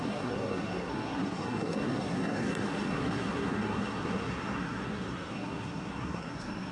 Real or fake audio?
fake